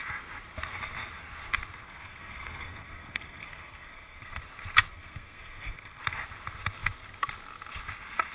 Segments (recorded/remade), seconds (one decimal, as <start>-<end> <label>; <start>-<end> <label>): 0.0-1.8 recorded; 1.8-4.4 remade; 4.4-4.9 recorded; 4.9-6.0 remade; 6.0-8.3 recorded